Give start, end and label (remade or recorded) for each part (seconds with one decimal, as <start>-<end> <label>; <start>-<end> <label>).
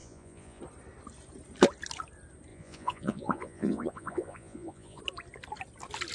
0.0-0.6 remade; 0.6-2.5 recorded; 2.5-5.0 remade; 5.0-6.1 recorded